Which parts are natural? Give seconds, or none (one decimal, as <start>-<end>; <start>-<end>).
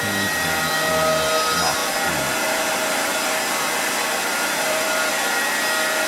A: 0.0-1.8; 5.1-6.1